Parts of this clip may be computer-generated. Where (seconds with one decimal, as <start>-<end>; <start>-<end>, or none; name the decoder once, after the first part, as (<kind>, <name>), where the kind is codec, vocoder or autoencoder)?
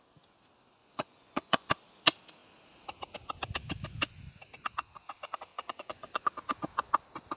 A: 0.8-1.7 (vocoder, Vocos); 5.5-6.3